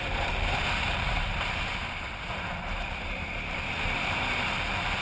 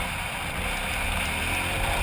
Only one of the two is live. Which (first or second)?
second